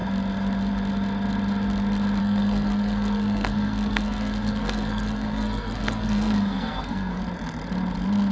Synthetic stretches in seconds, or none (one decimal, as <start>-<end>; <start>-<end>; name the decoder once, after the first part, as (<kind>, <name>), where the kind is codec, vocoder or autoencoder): 2.2-7.2 (codec, SNAC)